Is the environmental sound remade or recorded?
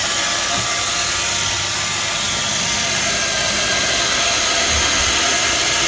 recorded